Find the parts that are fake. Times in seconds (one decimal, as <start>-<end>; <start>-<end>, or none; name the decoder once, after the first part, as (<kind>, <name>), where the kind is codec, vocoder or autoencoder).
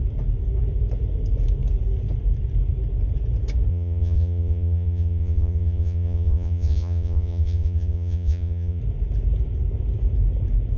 3.7-8.8 (vocoder, Vocos)